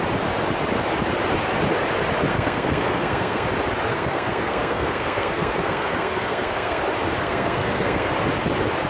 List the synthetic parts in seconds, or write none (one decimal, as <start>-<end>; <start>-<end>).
2.3-3.5; 3.9-6.8; 7.2-8.1